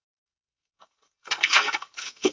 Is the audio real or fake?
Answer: fake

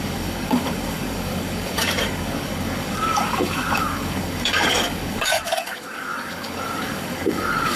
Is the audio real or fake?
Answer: fake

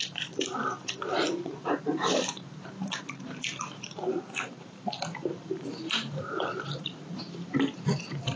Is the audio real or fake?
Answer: fake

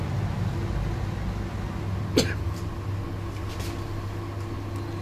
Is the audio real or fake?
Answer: real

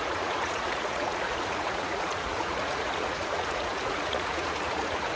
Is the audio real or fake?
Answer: fake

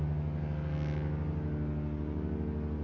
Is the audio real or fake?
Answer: real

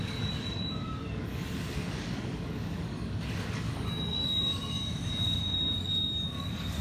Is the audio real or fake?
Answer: fake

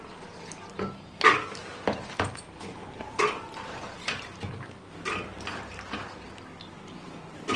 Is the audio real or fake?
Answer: fake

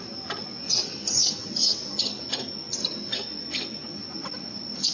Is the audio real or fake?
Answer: real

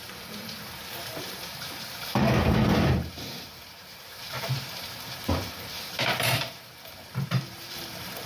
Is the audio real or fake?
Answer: fake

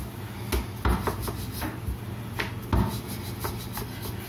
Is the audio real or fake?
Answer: real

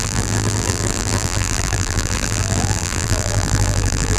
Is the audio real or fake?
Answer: fake